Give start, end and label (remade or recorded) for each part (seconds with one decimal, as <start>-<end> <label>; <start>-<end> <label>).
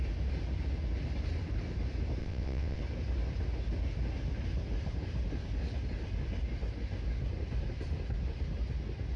0.0-2.2 recorded; 2.2-2.8 remade; 2.8-9.2 recorded